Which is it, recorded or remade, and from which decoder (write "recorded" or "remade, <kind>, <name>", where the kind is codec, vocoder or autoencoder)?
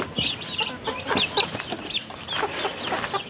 recorded